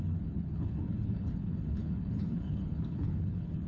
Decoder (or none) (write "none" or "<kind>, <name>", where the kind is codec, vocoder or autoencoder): codec, HILCodec